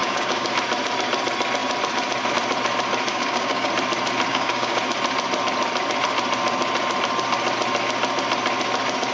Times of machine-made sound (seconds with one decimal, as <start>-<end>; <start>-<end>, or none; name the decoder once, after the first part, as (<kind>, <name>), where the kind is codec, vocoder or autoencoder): 0.0-0.5 (codec, DAC); 3.1-3.7; 4.3-4.8